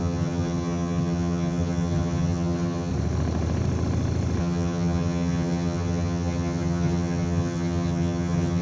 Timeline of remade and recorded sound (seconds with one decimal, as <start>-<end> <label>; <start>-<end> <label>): 0.0-2.9 remade; 2.9-4.4 recorded; 4.4-8.6 remade